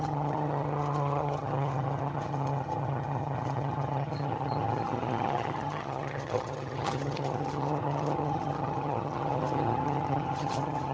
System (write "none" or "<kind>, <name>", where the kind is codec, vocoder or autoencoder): vocoder, HiFi-GAN